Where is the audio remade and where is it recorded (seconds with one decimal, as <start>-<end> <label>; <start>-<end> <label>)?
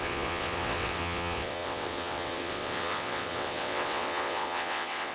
0.0-5.1 remade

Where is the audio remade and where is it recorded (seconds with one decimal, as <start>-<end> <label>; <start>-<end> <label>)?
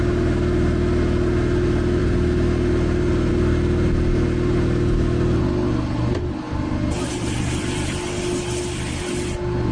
0.0-9.7 recorded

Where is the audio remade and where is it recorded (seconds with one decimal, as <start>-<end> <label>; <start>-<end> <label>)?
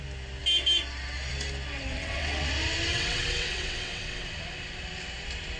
0.0-1.9 recorded; 1.9-2.5 remade; 2.5-2.9 recorded; 2.9-4.3 remade; 4.3-5.6 recorded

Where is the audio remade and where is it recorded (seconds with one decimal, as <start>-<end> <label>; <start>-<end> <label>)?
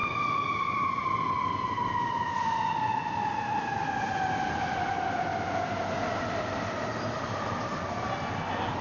0.0-8.8 recorded